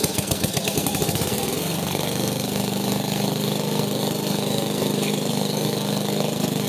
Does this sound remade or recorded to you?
remade